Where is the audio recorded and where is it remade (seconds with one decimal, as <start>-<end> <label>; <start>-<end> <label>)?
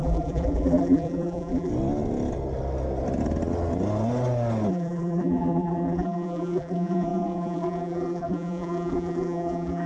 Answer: 0.0-1.7 remade; 1.7-4.7 recorded; 4.7-9.9 remade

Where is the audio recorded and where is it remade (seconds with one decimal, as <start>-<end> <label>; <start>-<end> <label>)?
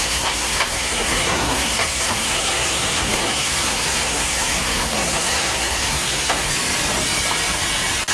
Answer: 0.0-6.5 remade; 6.5-8.1 recorded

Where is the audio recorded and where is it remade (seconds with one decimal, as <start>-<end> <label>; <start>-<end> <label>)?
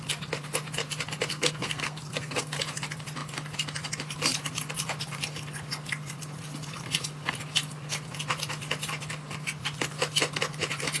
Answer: 0.0-1.3 recorded; 1.3-2.6 remade; 2.6-11.0 recorded